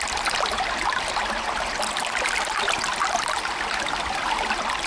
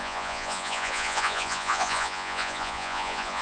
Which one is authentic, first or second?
first